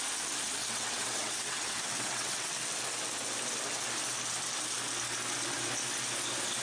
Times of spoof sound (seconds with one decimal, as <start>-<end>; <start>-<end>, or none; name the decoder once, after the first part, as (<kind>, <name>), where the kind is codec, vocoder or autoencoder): 0.6-2.5 (vocoder, WaveNeXt)

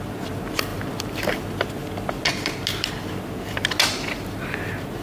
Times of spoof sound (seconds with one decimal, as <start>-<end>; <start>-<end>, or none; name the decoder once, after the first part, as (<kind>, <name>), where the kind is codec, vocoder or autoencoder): none

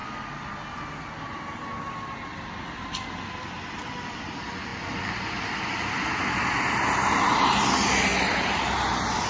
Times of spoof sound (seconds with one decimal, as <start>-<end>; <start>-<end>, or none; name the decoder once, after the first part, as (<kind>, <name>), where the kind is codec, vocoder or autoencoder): none

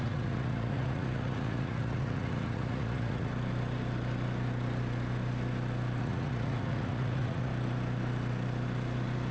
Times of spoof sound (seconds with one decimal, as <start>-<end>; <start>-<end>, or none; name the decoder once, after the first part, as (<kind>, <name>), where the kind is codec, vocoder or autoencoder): 0.0-3.3 (vocoder, Vocos); 6.0-7.5

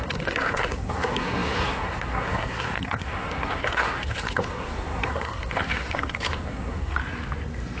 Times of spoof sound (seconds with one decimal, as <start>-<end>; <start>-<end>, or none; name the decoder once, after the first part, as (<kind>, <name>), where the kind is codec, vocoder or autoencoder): 0.0-7.0 (codec, SNAC)